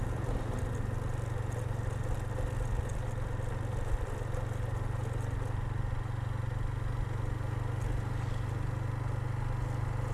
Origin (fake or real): real